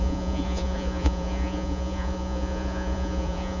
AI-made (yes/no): yes